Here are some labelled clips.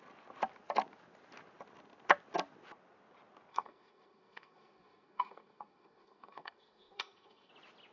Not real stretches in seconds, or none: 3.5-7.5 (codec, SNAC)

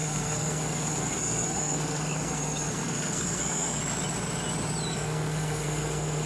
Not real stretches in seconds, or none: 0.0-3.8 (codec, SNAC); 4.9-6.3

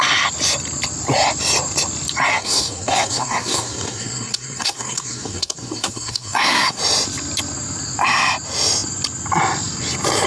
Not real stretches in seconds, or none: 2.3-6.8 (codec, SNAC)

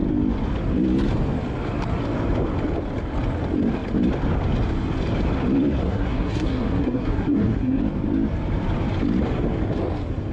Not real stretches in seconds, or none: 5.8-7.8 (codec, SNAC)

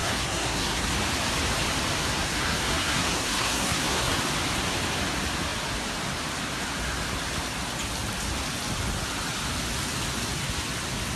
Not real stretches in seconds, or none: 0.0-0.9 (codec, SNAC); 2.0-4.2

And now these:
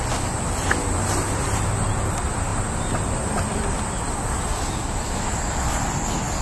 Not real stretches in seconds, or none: none